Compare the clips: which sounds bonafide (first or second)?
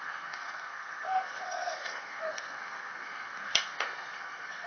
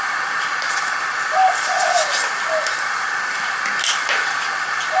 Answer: second